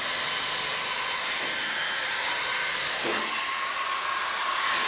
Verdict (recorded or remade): recorded